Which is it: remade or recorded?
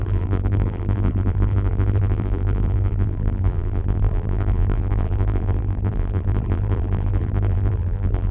remade